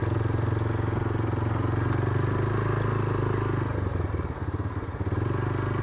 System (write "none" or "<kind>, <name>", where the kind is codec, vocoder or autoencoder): none